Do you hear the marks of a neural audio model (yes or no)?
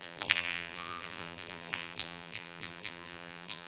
yes